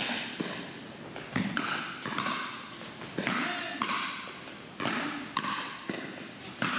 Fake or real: real